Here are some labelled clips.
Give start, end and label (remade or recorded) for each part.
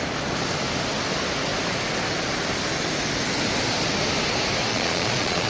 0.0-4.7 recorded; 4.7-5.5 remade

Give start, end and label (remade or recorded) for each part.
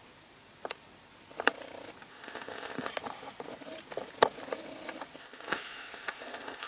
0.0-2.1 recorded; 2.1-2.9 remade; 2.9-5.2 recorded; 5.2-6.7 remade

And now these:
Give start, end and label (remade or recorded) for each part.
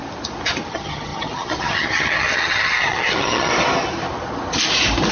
0.0-0.7 recorded; 0.7-3.5 remade; 3.5-5.1 recorded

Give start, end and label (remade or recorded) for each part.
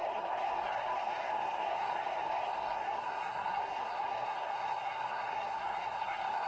0.0-6.5 remade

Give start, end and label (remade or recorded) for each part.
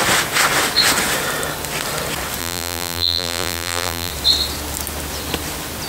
0.0-2.4 recorded; 2.4-4.1 remade; 4.1-5.9 recorded